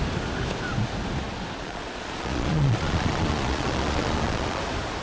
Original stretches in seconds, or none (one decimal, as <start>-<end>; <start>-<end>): 0.0-1.6; 4.6-5.0